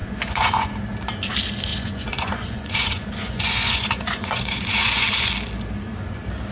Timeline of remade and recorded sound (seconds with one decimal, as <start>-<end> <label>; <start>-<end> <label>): 0.0-0.7 remade; 0.7-1.7 recorded; 1.7-5.3 remade; 5.3-6.5 recorded